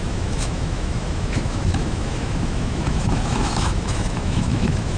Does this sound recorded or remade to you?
remade